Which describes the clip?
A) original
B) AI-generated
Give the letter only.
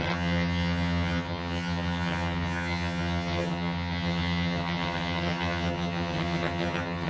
B